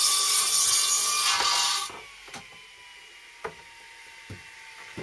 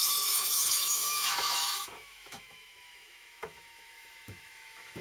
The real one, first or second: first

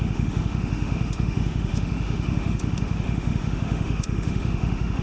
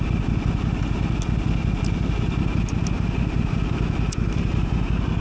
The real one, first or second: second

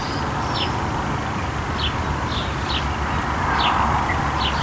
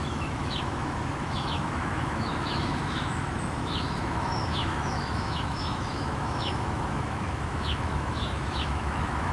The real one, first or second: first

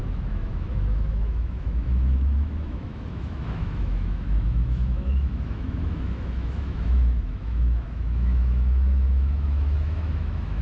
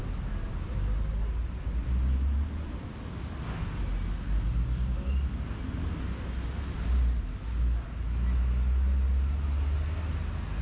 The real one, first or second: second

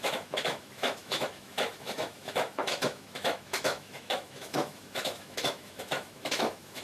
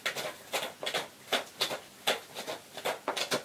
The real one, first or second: second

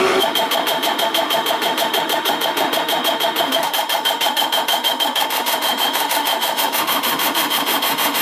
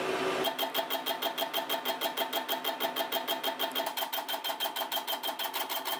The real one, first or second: second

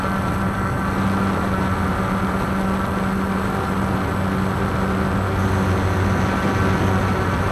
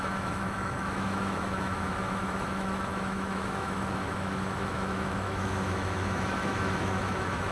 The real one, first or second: first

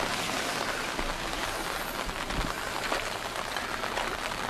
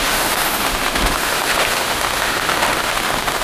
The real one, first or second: first